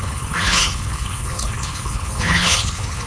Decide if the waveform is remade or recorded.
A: remade